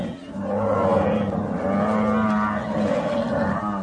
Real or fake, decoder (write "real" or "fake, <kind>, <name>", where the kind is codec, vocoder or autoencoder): real